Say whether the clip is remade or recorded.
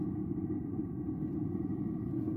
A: remade